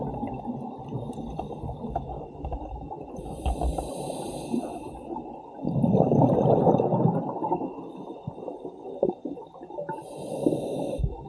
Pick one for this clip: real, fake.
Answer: real